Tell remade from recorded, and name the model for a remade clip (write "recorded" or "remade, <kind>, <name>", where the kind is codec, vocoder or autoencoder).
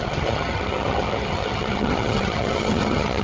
remade, vocoder, HiFi-GAN